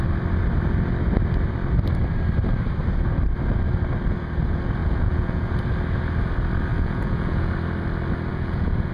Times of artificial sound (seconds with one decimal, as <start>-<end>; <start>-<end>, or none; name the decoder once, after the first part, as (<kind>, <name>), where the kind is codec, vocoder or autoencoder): 4.8-5.5 (vocoder, Vocos); 6.7-7.5; 8.3-8.9